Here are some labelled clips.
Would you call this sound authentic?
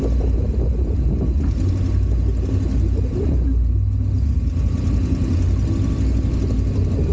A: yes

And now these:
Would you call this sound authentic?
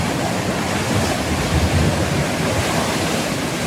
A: yes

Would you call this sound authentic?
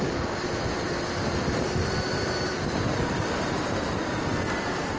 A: no